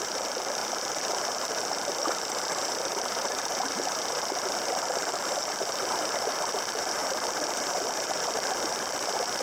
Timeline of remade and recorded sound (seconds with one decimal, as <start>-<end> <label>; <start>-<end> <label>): 0.0-0.6 remade; 0.6-4.9 recorded; 4.9-9.4 remade